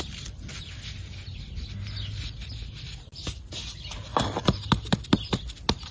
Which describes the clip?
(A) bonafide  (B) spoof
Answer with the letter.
A